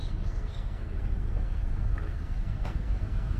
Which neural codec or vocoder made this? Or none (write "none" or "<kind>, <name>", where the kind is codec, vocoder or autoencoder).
codec, SNAC